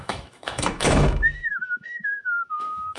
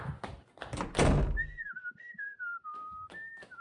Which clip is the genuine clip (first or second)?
second